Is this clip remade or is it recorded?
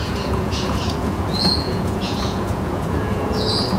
remade